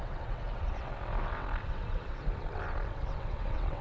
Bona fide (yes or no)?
no